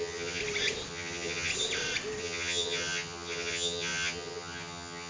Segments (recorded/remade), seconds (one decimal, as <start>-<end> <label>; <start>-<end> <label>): 0.0-0.4 remade; 0.4-0.9 recorded; 0.9-1.5 remade; 1.5-2.2 recorded; 2.2-5.1 remade